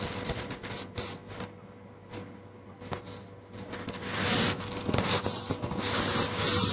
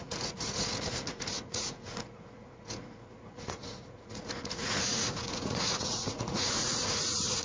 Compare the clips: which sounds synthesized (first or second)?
second